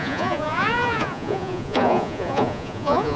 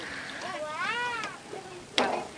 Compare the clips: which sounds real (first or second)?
second